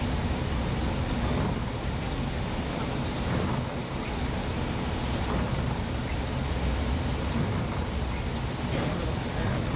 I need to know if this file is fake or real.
real